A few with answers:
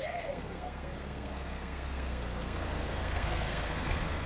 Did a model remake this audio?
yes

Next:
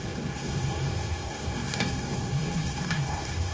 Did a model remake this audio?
yes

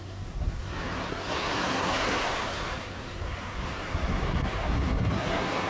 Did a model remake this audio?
yes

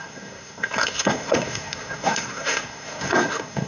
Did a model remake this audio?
yes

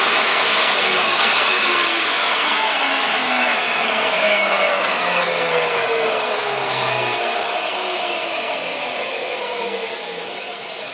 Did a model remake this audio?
yes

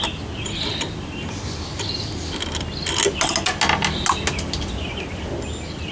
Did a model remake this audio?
no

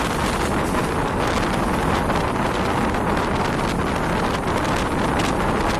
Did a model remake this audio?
no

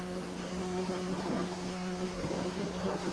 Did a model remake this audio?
yes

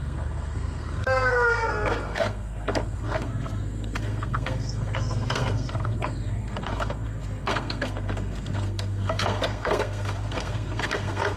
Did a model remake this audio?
yes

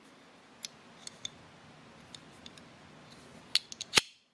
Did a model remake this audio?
no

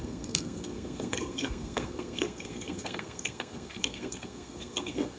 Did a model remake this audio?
yes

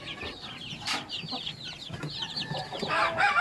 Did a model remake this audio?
no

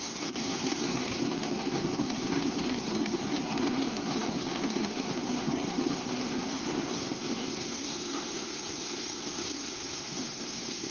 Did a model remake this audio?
yes